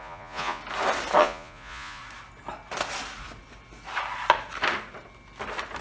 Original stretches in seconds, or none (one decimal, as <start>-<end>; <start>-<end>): 0.6-1.2; 2.0-5.8